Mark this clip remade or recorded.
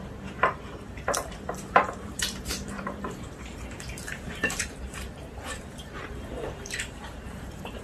remade